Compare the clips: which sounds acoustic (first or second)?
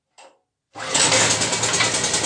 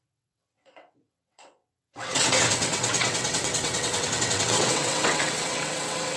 first